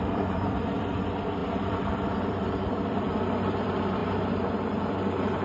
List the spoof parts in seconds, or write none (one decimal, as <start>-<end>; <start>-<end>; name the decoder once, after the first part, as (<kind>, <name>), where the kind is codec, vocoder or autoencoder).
0.0-5.4 (vocoder, BigVGAN v2)